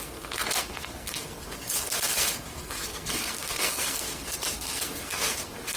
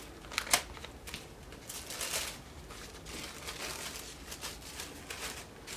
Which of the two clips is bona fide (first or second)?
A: second